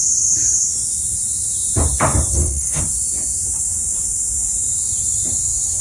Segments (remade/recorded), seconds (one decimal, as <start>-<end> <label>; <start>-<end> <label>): 0.0-2.3 recorded; 2.3-2.8 remade; 2.8-5.8 recorded